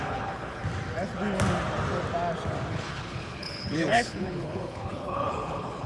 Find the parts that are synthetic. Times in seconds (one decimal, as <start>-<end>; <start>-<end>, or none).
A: 0.0-0.6; 2.7-5.9